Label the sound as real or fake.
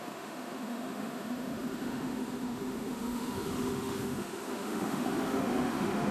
fake